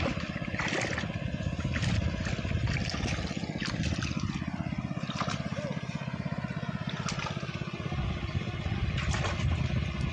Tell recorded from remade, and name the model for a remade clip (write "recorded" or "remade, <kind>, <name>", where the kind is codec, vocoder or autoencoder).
recorded